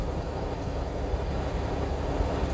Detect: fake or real real